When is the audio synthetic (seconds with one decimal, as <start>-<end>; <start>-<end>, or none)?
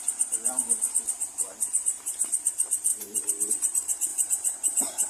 2.9-3.5; 4.1-5.1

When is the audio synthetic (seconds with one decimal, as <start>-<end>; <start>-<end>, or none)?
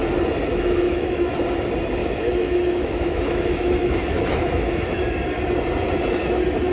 0.5-1.3; 2.0-5.0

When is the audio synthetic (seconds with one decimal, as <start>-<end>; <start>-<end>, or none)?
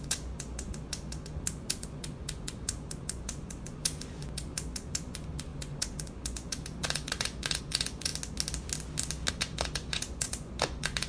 0.0-8.1; 9.3-11.1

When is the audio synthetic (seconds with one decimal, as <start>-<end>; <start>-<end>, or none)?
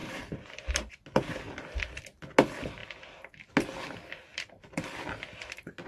0.0-0.9; 4.3-4.9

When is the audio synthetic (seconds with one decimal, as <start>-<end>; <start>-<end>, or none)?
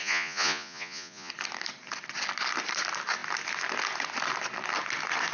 0.0-1.3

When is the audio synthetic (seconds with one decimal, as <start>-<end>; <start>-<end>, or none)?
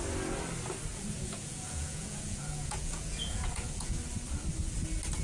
0.9-4.0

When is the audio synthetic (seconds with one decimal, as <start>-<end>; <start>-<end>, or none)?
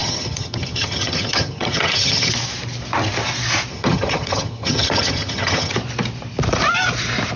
0.0-2.3; 3.7-5.7